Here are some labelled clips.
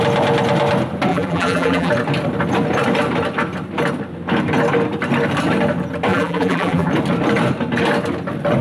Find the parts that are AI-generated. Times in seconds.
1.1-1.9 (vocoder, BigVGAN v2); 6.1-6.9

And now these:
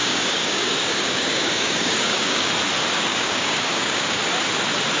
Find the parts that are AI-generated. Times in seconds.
0.0-2.5 (codec, DAC); 3.1-4.4